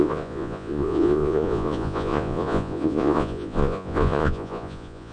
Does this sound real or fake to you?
fake